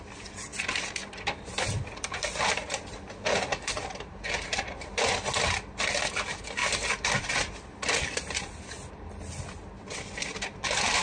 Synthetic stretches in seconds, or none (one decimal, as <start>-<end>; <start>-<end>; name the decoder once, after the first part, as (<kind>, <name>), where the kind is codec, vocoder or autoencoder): 3.5-5.0 (vocoder, BigVGAN v2)